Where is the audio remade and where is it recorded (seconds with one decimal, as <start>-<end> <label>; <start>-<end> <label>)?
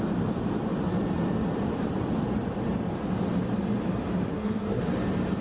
0.0-4.3 recorded; 4.3-4.8 remade; 4.8-5.4 recorded